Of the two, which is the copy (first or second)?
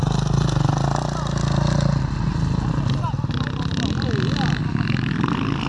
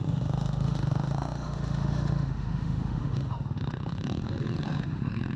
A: second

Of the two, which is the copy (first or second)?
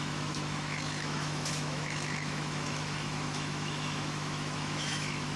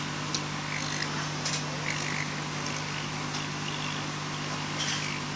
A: first